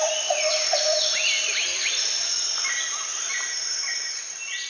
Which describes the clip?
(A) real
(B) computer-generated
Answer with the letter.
A